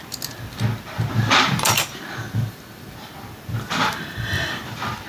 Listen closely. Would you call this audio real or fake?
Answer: real